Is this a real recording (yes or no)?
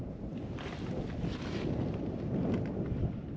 yes